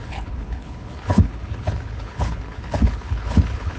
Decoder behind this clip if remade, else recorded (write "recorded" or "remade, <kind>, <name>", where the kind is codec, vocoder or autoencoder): remade, codec, HILCodec